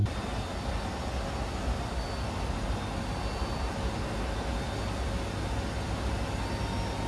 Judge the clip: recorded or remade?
recorded